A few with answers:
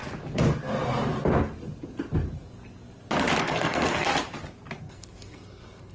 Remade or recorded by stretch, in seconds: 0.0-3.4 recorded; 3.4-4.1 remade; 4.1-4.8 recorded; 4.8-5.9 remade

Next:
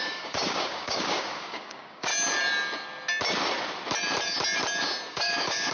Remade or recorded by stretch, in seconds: 0.0-2.1 remade; 2.1-5.1 recorded; 5.1-5.7 remade